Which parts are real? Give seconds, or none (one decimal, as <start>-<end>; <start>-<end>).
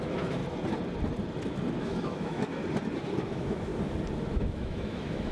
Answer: 0.4-1.8; 2.6-3.2; 3.7-4.3